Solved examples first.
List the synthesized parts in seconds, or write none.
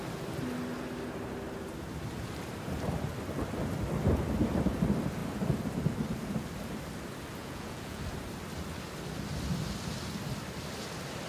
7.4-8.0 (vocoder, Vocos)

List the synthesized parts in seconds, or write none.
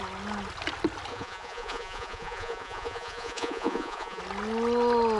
1.1-4.2 (vocoder, Vocos)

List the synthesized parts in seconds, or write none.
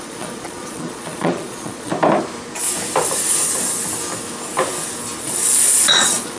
0.0-1.9 (vocoder, Vocos); 5.2-6.4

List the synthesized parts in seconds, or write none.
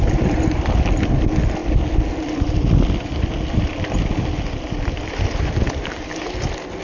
none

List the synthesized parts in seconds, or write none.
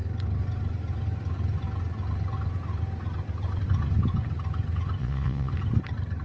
5.0-5.5 (vocoder, Vocos)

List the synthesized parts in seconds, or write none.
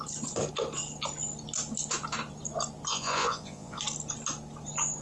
2.9-3.8 (vocoder, Vocos)